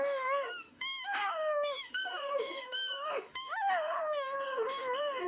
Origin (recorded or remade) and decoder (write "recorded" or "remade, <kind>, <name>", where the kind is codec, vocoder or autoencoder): remade, autoencoder, DAC-VAE